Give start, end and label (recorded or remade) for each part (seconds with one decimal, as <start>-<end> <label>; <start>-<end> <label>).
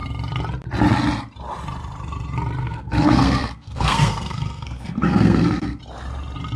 0.0-2.6 recorded; 2.6-5.8 remade; 5.8-6.6 recorded